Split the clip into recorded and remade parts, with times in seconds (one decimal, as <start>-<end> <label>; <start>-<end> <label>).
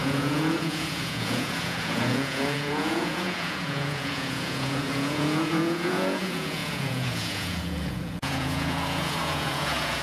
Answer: 0.0-10.0 remade